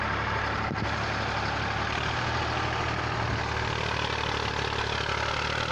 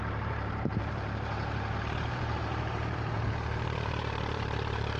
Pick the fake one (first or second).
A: second